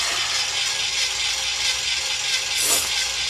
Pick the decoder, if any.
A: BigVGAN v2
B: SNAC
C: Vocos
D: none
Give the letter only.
D